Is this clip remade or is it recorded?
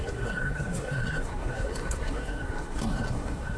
remade